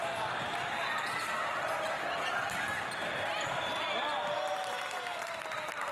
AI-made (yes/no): no